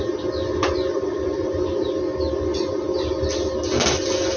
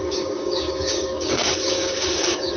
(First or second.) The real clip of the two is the first